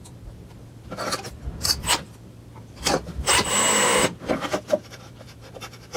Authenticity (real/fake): fake